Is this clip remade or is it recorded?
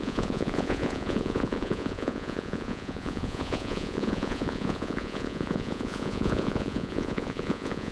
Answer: remade